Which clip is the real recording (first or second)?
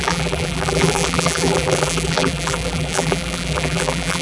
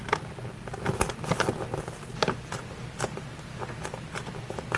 second